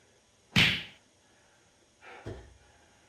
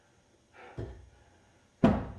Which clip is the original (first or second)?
second